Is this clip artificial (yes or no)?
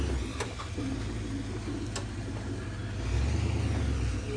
no